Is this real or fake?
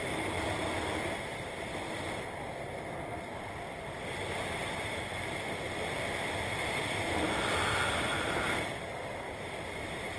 real